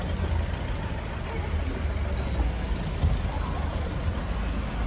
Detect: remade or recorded recorded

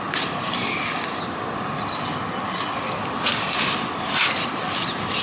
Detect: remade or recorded recorded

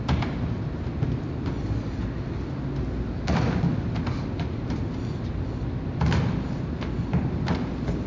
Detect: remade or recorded recorded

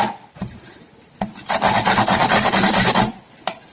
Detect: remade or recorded recorded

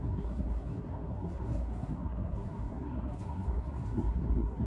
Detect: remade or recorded remade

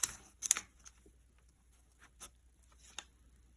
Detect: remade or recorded recorded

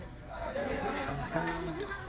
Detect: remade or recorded remade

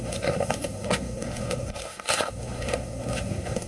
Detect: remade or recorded remade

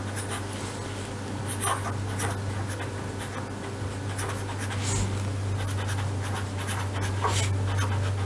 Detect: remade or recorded recorded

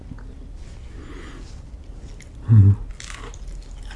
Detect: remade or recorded recorded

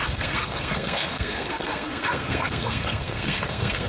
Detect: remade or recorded remade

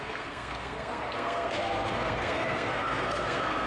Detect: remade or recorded remade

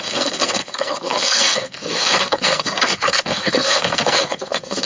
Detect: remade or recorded remade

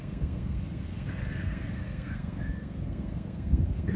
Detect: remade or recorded remade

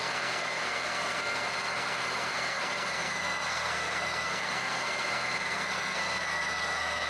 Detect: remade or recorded remade